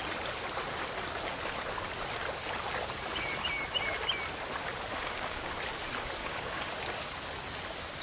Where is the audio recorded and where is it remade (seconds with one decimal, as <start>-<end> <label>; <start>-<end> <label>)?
0.0-4.9 recorded; 4.9-5.6 remade; 5.6-6.2 recorded; 6.2-6.7 remade; 6.7-8.0 recorded

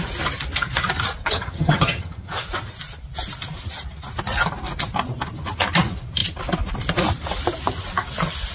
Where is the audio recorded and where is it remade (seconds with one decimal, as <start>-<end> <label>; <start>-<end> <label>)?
0.0-1.3 recorded; 1.3-2.3 remade; 2.3-8.5 recorded

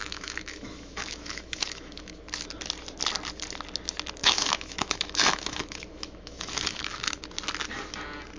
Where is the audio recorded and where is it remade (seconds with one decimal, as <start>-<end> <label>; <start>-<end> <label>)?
0.0-2.1 remade; 2.1-4.2 recorded; 4.2-7.2 remade; 7.2-8.4 recorded

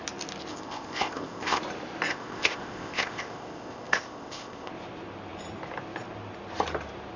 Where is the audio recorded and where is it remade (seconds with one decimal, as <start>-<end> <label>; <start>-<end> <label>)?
0.0-0.5 recorded; 0.5-1.6 remade; 1.6-2.1 recorded; 2.1-4.7 remade; 4.7-7.2 recorded